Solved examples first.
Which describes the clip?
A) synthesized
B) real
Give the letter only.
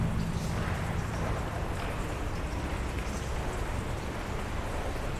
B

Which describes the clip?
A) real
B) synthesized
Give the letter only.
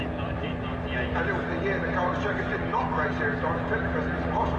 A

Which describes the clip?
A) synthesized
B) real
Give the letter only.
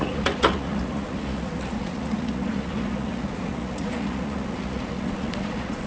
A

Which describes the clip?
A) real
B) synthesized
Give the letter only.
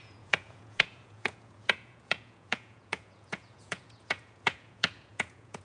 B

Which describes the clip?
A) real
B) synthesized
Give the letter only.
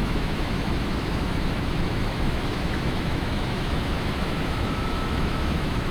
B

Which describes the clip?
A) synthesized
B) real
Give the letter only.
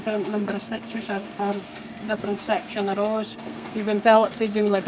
A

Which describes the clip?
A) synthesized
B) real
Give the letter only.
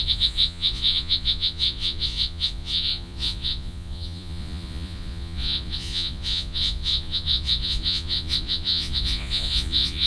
A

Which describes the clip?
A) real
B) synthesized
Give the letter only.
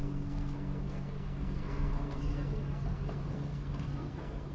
B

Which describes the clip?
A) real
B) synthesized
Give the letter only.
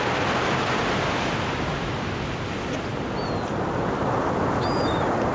A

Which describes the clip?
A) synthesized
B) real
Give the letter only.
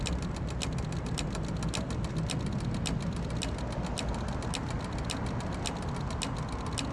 B